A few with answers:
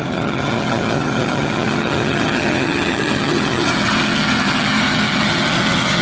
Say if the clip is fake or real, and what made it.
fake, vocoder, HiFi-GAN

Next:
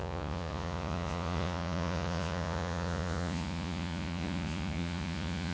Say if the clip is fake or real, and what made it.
fake, vocoder, Vocos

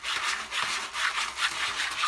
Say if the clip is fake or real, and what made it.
real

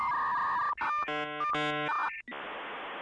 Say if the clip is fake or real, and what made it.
real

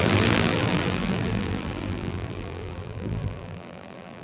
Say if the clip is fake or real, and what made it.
fake, vocoder, BigVGAN v2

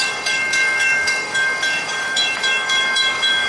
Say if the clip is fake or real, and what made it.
fake, codec, DAC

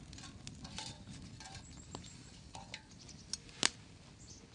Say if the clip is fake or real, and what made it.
real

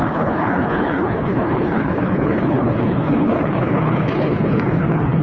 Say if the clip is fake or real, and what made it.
fake, codec, HILCodec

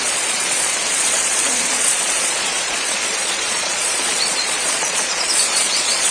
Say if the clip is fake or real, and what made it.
fake, vocoder, Vocos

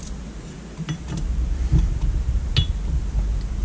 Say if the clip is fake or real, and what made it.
real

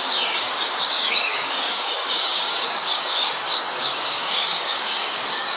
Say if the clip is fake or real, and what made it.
fake, codec, DAC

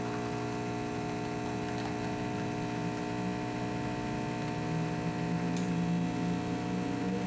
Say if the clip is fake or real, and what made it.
real